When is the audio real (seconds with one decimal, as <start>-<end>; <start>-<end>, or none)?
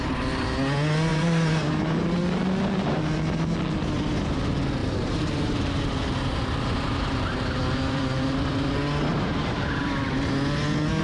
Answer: 0.0-1.1; 1.7-4.8; 8.5-9.1; 9.8-11.0